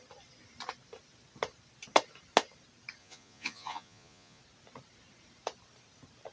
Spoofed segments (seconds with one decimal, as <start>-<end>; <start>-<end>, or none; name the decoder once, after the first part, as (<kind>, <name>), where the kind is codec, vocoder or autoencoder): 3.0-4.4 (vocoder, Vocos)